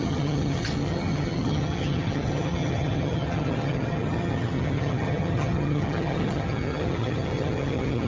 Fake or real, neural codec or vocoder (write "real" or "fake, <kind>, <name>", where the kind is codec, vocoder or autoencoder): fake, vocoder, HiFi-GAN